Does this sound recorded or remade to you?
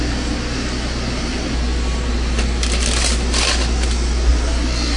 recorded